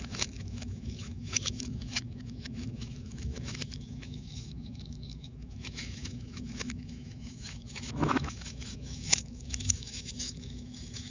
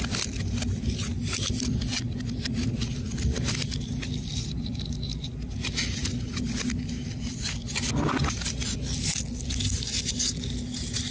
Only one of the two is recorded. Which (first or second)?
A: second